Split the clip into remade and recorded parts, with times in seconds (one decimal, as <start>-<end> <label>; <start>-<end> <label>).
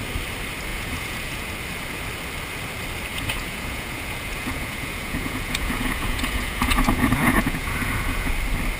0.0-0.7 recorded; 0.7-1.5 remade; 1.5-3.1 recorded; 3.1-8.3 remade; 8.3-8.8 recorded